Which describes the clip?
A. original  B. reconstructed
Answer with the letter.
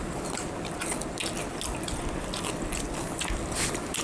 A